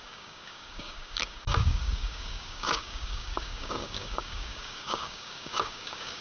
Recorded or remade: remade